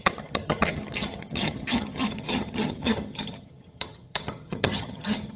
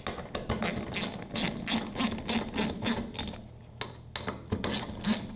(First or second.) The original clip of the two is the second